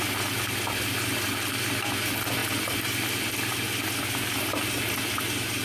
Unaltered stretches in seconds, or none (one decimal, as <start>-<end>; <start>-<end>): 0.0-5.6